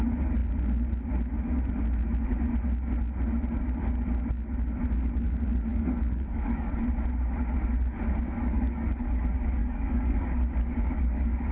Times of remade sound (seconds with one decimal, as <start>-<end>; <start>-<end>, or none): 5.7-6.7; 8.4-9.0; 9.6-11.5